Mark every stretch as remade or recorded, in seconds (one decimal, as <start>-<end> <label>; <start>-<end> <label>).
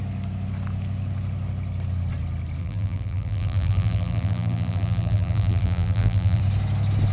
0.0-2.6 recorded; 2.6-6.4 remade; 6.4-7.1 recorded